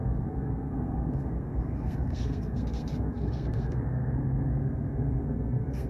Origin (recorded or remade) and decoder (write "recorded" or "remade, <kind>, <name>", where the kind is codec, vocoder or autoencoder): remade, codec, SNAC